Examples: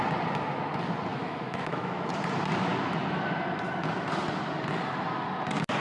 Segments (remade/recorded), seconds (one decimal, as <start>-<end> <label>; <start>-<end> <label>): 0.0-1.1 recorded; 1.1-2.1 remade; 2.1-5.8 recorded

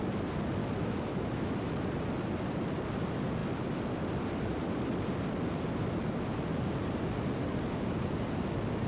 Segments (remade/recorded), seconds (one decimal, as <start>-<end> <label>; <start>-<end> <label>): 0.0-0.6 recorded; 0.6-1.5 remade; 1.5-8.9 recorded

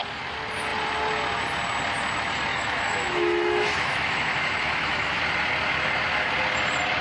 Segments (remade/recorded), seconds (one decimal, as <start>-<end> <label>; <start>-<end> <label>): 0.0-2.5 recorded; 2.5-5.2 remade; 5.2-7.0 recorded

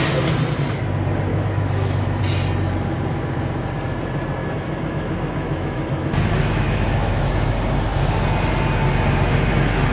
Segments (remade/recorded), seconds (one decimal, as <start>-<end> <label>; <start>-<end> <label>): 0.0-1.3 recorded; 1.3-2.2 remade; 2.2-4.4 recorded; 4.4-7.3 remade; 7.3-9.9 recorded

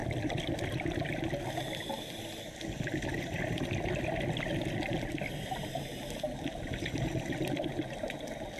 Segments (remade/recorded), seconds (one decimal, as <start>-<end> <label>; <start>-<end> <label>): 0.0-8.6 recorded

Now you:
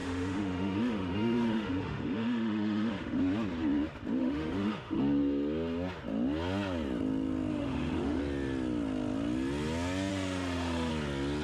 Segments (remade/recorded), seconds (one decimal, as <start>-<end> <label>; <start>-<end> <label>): 0.0-3.2 remade; 3.2-4.2 recorded; 4.2-5.0 remade; 5.0-7.5 recorded; 7.5-8.2 remade; 8.2-10.1 recorded; 10.1-10.9 remade; 10.9-11.4 recorded

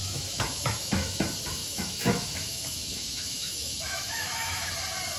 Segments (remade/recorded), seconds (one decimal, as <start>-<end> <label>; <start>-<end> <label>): 0.0-1.2 remade; 1.2-1.6 recorded; 1.6-4.7 remade; 4.7-5.2 recorded

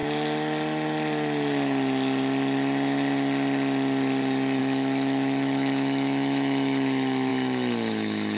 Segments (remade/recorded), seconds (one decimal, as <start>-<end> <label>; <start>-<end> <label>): 0.0-4.6 recorded; 4.6-8.4 remade